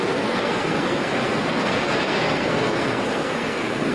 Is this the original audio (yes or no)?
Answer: no